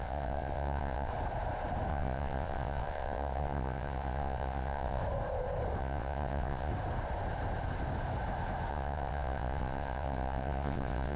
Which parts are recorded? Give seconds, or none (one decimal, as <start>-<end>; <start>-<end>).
1.1-1.9; 5.0-5.8; 6.7-8.7